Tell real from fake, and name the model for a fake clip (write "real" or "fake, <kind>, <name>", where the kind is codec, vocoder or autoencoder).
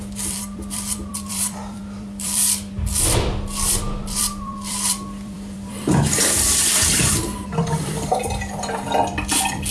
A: fake, vocoder, BigVGAN v2